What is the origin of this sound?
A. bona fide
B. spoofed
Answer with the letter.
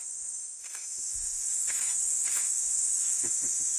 B